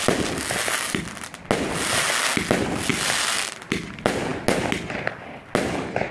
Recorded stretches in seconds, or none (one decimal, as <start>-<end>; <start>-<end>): 0.0-6.1